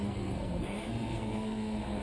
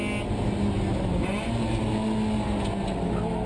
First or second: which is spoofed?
first